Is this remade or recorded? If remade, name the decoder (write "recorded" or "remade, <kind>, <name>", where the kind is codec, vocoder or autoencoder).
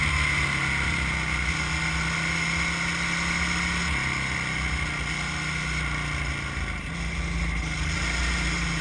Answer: recorded